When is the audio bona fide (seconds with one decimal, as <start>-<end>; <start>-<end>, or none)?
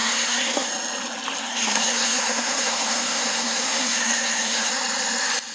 0.7-1.4; 4.7-5.5